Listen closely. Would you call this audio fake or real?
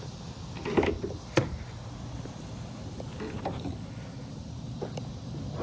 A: real